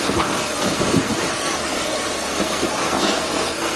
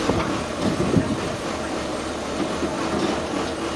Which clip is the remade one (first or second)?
first